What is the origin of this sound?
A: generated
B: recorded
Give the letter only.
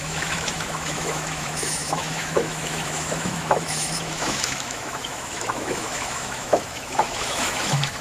A